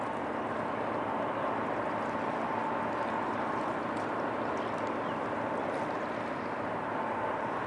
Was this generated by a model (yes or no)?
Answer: no